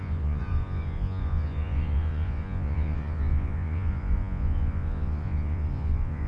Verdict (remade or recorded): remade